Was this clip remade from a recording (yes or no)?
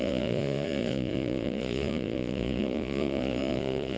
yes